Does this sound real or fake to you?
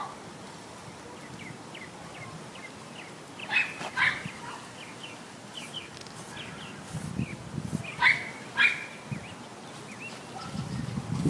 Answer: real